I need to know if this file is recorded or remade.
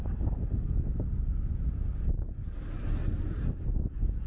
recorded